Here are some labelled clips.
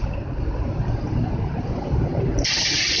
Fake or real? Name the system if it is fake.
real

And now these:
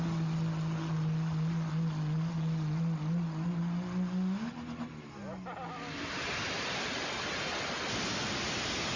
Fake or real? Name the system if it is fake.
real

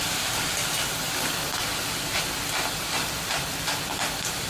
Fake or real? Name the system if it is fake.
real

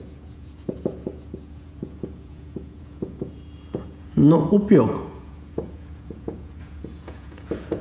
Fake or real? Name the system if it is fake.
fake, vocoder, Vocos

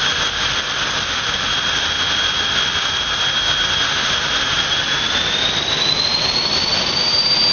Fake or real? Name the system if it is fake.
real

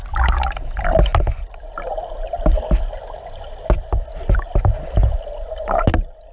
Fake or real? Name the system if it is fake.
real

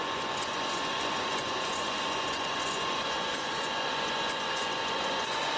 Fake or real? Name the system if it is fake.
fake, vocoder, Vocos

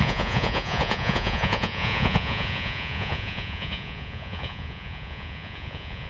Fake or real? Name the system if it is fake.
fake, vocoder, Vocos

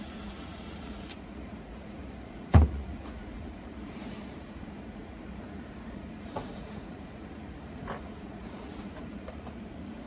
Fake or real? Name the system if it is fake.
fake, vocoder, Vocos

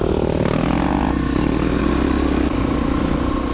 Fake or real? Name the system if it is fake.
real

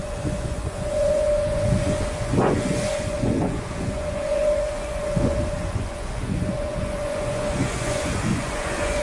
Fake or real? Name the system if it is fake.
fake, vocoder, Vocos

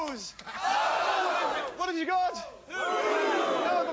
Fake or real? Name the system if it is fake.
real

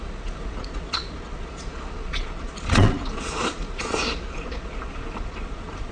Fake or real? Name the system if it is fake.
fake, vocoder, Vocos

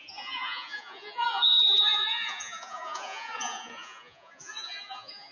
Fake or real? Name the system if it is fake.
fake, vocoder, Vocos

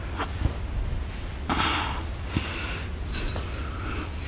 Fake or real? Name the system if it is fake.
real